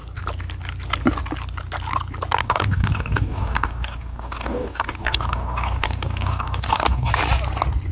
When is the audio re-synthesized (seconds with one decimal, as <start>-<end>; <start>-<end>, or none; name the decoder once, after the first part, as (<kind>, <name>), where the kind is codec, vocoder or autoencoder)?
2.4-7.1 (codec, DAC)